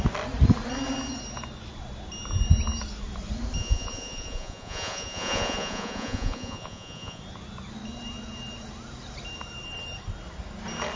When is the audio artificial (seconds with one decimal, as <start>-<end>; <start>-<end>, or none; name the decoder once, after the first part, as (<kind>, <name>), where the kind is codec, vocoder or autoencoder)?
3.6-7.2 (vocoder, Vocos)